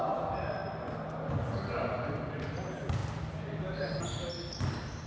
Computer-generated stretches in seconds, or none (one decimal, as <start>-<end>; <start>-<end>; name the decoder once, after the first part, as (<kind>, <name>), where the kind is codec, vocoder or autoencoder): none